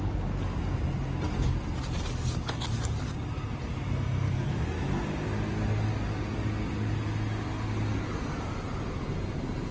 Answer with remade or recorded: recorded